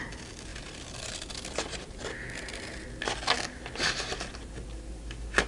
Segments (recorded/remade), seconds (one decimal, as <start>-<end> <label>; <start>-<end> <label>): 0.0-0.5 recorded; 0.5-1.3 remade; 1.3-5.5 recorded